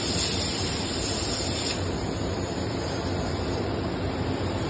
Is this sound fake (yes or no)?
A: yes